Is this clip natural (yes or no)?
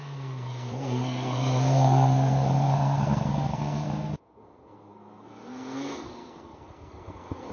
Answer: no